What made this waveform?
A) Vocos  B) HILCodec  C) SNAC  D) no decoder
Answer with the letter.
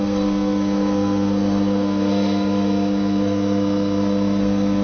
C